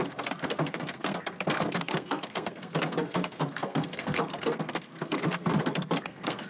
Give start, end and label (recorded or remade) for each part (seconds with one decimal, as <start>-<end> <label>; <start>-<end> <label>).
0.0-6.5 remade